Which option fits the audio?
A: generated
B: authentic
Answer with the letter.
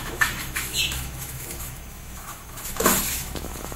A